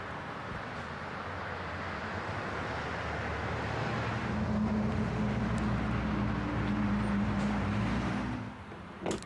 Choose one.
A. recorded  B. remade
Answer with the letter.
A